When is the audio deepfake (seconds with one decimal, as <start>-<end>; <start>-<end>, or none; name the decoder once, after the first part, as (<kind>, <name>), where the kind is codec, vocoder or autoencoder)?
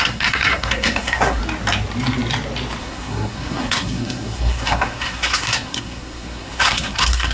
0.0-1.4 (codec, SNAC); 2.8-7.3